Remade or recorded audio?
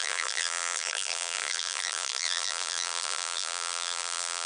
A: remade